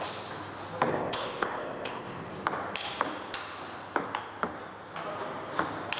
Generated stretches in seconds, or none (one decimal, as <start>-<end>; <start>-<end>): 0.9-2.3